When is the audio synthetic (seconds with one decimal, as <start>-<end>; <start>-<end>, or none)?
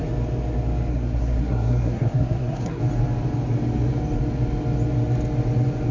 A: 0.9-2.8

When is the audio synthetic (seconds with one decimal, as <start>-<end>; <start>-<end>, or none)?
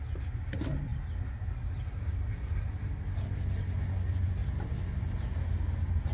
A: none